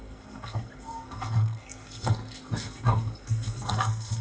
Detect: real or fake fake